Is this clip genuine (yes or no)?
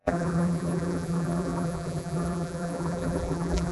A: no